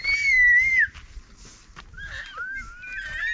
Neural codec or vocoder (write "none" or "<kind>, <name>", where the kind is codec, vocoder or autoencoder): none